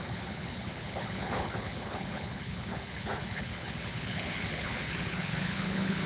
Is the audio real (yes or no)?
no